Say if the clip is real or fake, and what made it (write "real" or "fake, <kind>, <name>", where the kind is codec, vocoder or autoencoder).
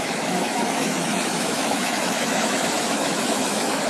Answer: fake, autoencoder, DAC-VAE